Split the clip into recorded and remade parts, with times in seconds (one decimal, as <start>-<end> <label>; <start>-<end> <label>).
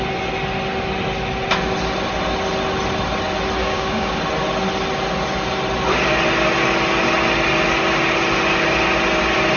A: 0.0-3.6 recorded; 3.6-4.2 remade; 4.2-9.6 recorded